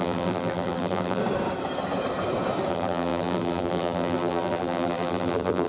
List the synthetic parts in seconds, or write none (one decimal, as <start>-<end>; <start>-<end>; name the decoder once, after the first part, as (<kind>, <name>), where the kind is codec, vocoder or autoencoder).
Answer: 0.0-1.2 (vocoder, BigVGAN v2); 2.7-5.7